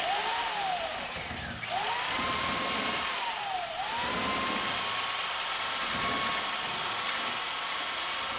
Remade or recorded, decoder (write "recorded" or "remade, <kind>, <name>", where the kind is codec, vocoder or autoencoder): recorded